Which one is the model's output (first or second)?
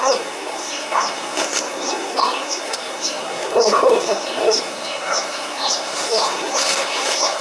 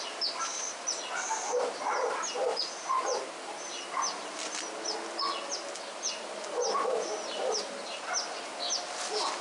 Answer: first